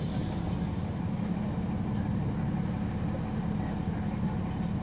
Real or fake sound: real